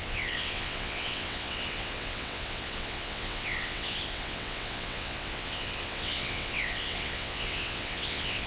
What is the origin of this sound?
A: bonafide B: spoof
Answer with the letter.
B